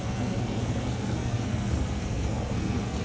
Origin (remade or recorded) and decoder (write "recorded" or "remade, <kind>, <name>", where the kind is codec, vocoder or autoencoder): remade, codec, SNAC